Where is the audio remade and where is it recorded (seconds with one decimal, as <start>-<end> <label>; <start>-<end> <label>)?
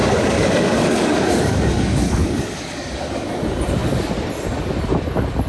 0.0-3.3 remade; 3.3-5.5 recorded